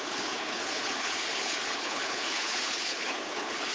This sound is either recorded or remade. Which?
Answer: remade